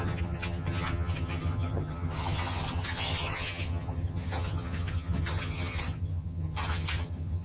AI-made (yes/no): yes